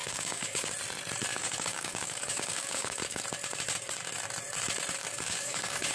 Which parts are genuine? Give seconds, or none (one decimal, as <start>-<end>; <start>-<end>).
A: 0.7-1.3; 3.2-5.0